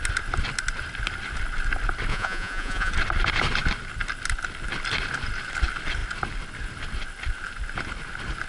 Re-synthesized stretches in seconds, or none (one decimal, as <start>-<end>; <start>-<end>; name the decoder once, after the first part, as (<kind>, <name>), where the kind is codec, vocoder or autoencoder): 2.1-2.9 (vocoder, Vocos)